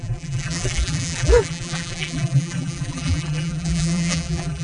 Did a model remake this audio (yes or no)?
yes